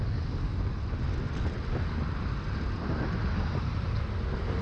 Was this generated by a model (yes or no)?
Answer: no